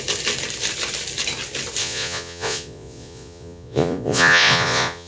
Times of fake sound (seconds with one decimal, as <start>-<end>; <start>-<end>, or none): 1.8-5.1

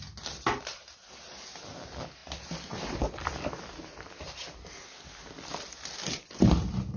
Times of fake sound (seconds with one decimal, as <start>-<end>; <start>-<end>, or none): none

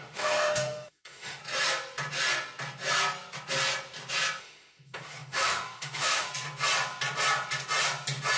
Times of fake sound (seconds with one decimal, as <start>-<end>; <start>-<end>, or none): 0.0-1.4; 4.4-6.3

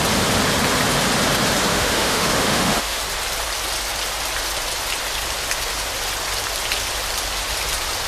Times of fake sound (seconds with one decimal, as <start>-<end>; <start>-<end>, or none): 1.7-3.0

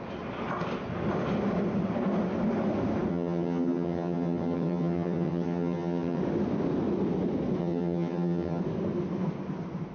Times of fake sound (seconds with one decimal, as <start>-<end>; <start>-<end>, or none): 3.1-6.2; 7.6-8.6

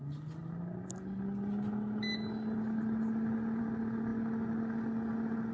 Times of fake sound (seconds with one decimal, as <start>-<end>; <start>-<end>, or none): none